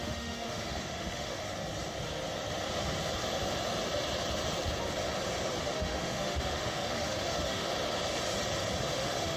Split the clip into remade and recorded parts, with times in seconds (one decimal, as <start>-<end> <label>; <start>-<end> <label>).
0.0-1.4 remade; 1.4-5.6 recorded; 5.6-7.7 remade; 7.7-8.8 recorded; 8.8-9.4 remade